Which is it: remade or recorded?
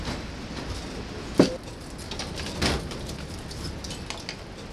recorded